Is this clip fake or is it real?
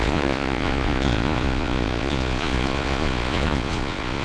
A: fake